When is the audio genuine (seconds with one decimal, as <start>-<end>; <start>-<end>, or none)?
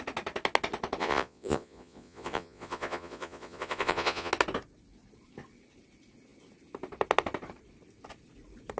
0.0-1.0; 4.3-8.8